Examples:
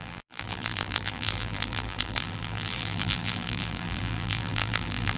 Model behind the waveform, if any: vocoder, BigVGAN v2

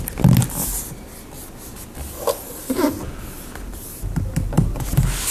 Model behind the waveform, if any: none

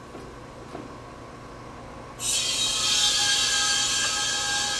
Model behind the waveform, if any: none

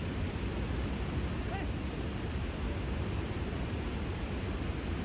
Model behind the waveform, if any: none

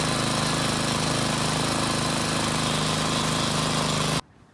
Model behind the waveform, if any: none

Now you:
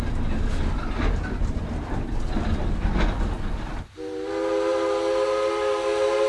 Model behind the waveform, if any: none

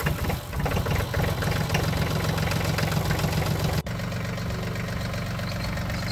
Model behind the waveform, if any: none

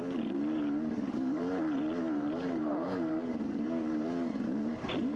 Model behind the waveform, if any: vocoder, BigVGAN v2